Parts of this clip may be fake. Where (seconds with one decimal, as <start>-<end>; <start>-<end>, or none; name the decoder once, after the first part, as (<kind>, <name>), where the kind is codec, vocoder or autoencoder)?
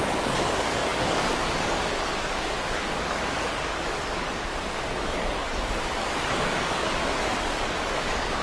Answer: 0.0-8.4 (codec, DAC)